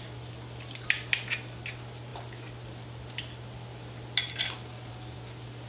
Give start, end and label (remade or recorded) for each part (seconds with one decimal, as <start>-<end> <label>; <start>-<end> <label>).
0.0-5.7 recorded